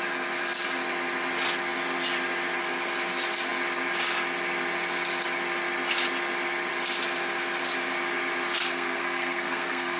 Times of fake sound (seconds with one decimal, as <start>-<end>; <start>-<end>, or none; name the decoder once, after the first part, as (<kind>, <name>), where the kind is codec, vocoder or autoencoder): 8.6-10.0 (codec, SNAC)